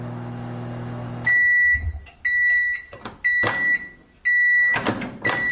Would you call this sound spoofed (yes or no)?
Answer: no